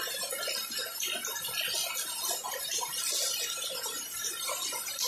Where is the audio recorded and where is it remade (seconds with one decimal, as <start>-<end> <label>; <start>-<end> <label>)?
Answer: 0.0-5.1 recorded